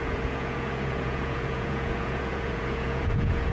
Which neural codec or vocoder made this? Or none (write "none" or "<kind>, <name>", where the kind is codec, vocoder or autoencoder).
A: vocoder, Vocos